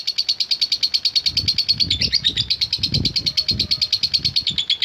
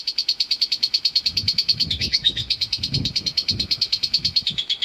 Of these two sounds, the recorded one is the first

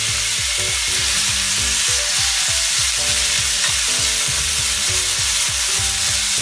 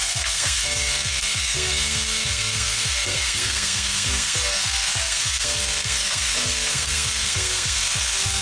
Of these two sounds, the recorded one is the first